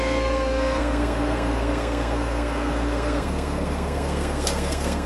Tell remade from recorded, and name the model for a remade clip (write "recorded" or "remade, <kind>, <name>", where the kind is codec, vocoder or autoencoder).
remade, codec, SNAC